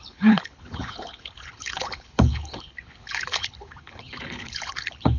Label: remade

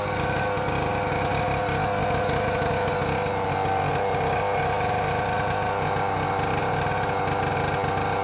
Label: recorded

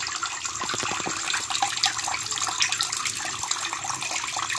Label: recorded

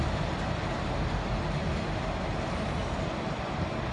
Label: recorded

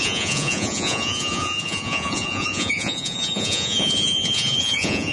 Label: remade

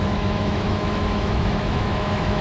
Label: remade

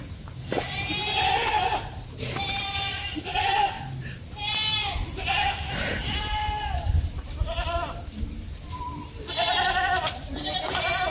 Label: remade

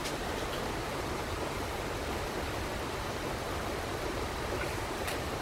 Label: recorded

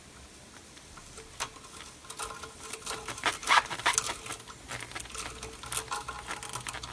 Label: recorded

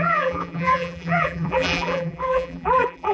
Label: remade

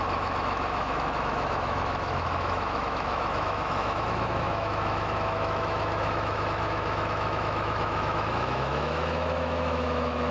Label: remade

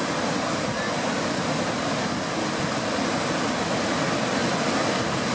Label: recorded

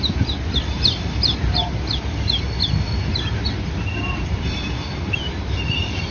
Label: recorded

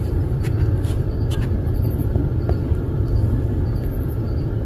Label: recorded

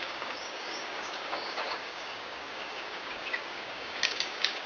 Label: remade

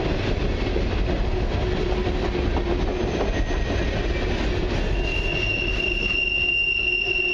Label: recorded